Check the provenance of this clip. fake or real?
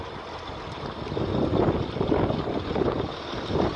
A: real